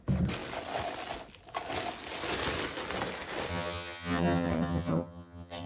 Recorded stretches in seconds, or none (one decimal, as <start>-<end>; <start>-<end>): 0.0-3.5